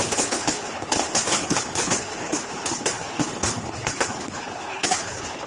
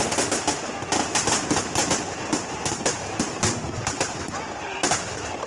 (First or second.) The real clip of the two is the second